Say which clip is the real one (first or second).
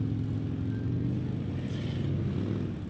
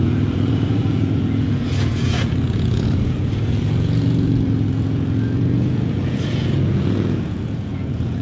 first